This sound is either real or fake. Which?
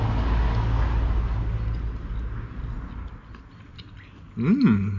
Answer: real